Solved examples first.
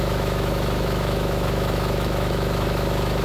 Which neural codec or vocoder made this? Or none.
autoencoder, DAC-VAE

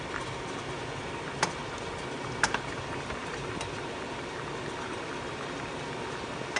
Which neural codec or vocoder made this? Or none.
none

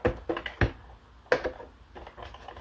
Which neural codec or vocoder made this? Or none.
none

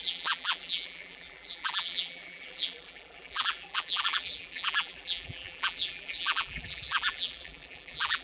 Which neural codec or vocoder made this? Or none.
vocoder, BigVGAN v2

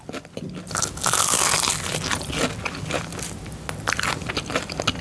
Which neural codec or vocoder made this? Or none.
none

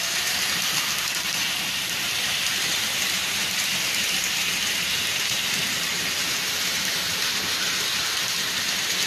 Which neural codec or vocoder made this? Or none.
vocoder, BigVGAN v2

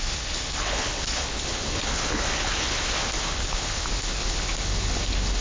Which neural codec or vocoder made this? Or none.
codec, HILCodec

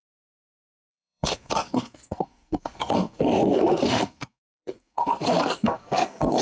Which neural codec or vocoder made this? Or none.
codec, SNAC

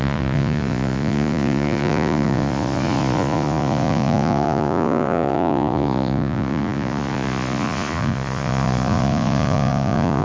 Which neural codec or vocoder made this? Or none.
vocoder, Vocos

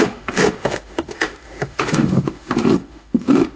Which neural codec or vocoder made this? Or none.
autoencoder, DAC-VAE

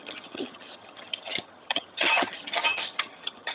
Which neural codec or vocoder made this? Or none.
vocoder, HiFi-GAN